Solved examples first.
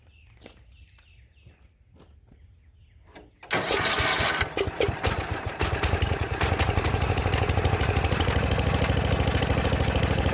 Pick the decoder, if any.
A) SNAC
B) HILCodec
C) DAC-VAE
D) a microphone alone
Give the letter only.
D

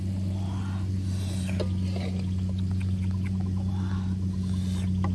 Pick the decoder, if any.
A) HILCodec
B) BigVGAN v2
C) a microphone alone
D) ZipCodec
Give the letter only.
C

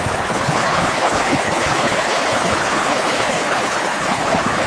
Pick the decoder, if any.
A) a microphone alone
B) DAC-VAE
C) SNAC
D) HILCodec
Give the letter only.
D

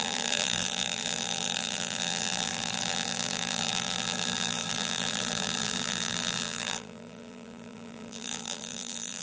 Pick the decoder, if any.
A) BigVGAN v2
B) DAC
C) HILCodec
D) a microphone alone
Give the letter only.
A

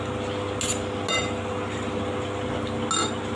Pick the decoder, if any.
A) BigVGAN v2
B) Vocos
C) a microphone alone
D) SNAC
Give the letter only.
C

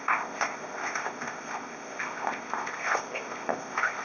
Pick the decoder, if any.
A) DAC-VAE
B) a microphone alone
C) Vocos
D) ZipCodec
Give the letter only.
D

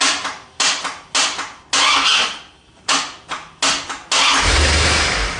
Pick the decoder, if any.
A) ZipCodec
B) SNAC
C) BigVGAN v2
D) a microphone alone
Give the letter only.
D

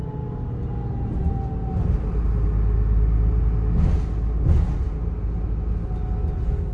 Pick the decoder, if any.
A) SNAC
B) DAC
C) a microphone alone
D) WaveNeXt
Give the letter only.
C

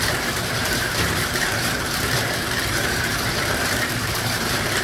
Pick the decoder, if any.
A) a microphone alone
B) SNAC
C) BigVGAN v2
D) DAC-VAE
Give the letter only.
C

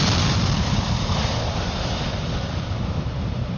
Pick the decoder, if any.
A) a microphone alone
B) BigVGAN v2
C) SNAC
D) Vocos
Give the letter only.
B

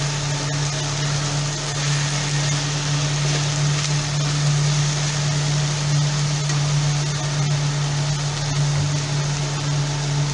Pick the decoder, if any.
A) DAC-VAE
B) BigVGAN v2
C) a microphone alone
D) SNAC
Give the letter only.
C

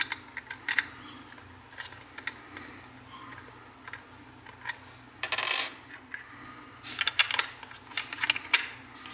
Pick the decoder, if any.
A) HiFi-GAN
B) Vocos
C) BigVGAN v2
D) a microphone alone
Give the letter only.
D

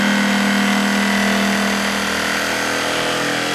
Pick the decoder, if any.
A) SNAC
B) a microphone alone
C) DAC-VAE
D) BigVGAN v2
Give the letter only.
B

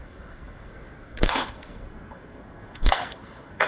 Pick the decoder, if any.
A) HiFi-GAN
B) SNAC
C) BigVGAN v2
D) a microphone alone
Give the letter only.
B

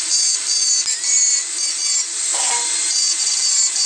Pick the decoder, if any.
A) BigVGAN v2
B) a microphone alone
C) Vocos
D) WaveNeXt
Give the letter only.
B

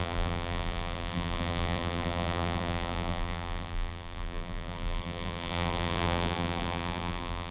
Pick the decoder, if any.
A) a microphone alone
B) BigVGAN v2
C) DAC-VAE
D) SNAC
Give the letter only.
B